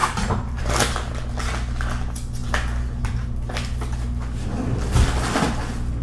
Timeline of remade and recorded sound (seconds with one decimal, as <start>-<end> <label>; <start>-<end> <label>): 0.0-0.6 remade; 0.6-6.0 recorded